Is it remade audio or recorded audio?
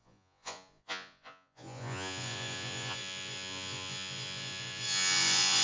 remade